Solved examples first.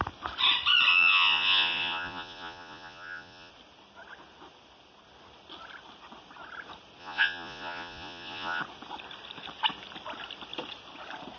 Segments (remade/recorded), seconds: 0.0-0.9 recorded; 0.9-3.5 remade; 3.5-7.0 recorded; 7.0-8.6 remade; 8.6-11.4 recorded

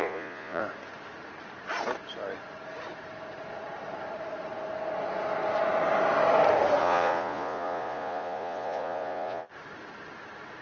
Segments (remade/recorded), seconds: 0.0-0.6 remade; 0.6-6.8 recorded; 6.8-9.5 remade; 9.5-10.6 recorded

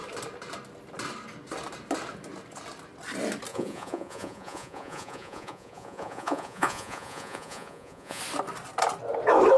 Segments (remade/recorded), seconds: 0.0-3.5 recorded; 3.5-8.2 remade; 8.2-9.6 recorded

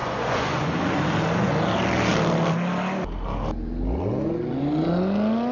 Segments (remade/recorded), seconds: 0.0-0.7 remade; 0.7-5.5 recorded